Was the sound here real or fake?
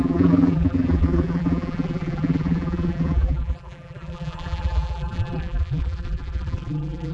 fake